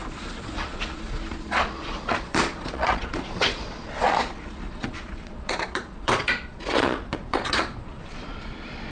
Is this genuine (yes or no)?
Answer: no